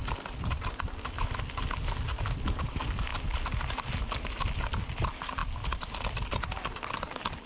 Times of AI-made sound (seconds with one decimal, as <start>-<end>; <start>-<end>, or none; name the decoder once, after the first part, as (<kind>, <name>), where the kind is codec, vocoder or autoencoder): none